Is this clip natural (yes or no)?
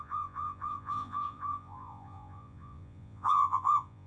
no